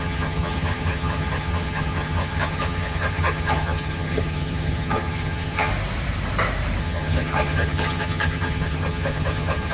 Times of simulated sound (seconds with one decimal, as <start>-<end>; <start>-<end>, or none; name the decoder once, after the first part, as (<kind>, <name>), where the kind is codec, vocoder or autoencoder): 0.0-5.7 (vocoder, HiFi-GAN); 6.8-9.7